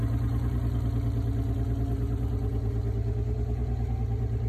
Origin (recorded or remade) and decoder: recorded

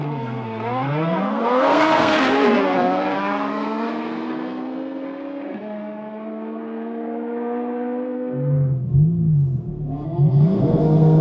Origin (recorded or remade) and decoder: remade, codec, SNAC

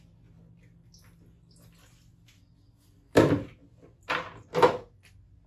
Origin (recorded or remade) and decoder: recorded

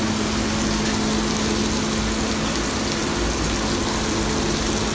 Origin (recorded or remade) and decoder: recorded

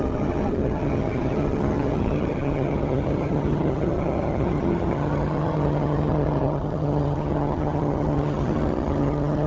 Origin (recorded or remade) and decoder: remade, vocoder, HiFi-GAN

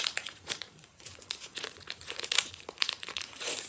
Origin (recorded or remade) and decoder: remade, vocoder, Vocos